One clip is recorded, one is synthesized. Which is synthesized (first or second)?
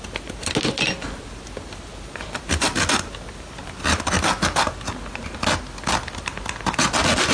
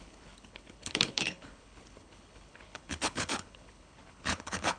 second